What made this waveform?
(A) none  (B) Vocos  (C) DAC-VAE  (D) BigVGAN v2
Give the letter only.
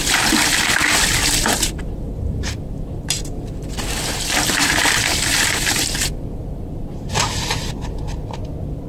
D